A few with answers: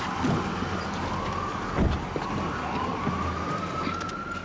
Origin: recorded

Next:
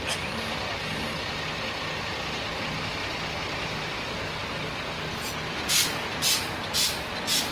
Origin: recorded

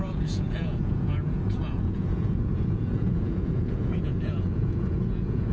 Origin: remade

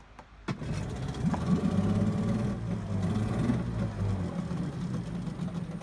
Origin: recorded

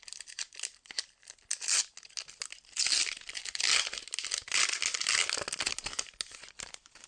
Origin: recorded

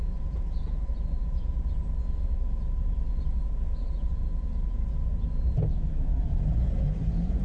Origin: remade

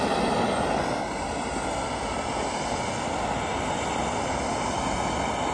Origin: recorded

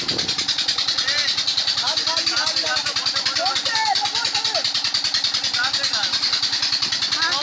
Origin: recorded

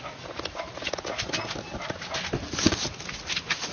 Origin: recorded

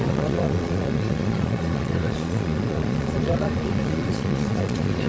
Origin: remade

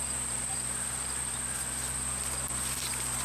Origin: recorded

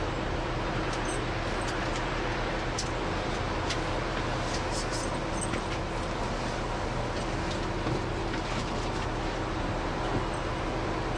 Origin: recorded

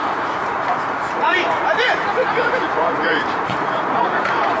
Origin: remade